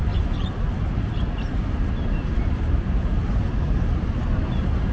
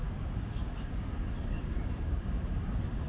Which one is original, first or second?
first